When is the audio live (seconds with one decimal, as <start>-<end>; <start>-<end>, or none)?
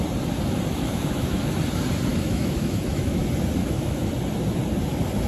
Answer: 0.0-0.7; 1.5-2.1; 3.2-3.6; 4.1-5.3